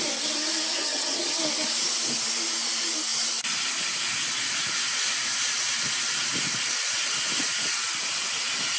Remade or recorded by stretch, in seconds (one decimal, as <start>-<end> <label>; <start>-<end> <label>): 0.0-0.7 recorded; 0.7-1.4 remade; 1.4-8.8 recorded